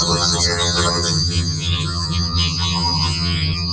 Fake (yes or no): yes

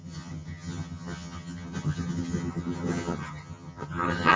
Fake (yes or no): yes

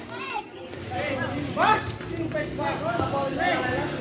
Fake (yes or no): no